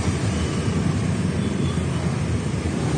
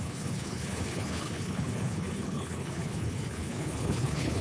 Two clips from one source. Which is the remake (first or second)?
second